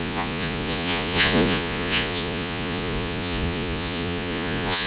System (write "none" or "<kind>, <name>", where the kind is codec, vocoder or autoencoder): vocoder, Vocos